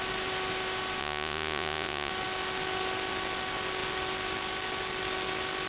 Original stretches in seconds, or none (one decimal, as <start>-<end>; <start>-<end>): 0.0-1.0; 2.1-5.7